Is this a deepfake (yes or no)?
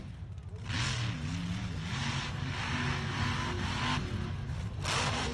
no